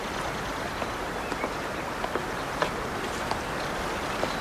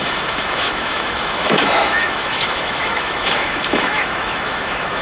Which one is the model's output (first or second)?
second